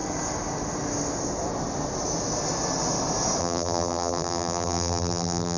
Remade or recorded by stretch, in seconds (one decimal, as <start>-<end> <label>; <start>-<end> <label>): 0.0-3.4 recorded; 3.4-5.6 remade